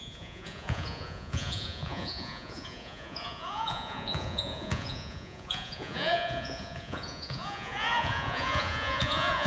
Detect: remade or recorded remade